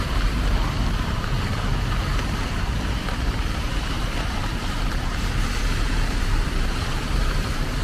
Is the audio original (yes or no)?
no